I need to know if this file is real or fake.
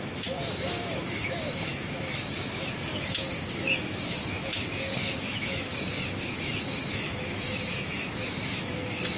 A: fake